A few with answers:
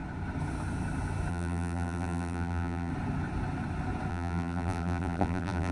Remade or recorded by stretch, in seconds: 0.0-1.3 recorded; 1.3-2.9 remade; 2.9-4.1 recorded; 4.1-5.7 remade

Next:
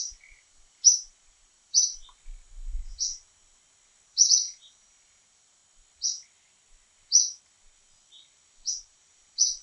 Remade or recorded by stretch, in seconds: 0.0-2.0 remade; 2.0-4.1 recorded; 4.1-5.6 remade; 5.6-8.7 recorded; 8.7-9.6 remade

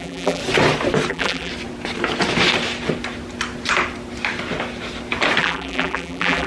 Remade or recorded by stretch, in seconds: 0.0-0.4 remade; 0.4-1.1 recorded; 1.1-1.5 remade; 1.5-5.4 recorded; 5.4-6.5 remade

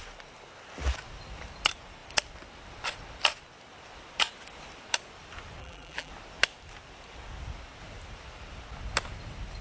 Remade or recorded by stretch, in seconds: 0.0-5.6 recorded; 5.6-6.1 remade; 6.1-9.6 recorded

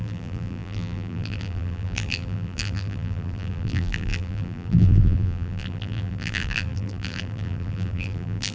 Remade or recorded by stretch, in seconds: 0.0-8.5 remade

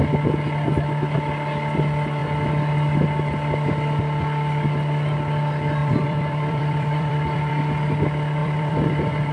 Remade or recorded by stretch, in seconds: 0.0-5.8 recorded; 5.8-7.5 remade; 7.5-8.4 recorded; 8.4-9.3 remade

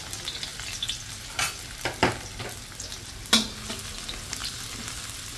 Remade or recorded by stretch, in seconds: 0.0-5.4 recorded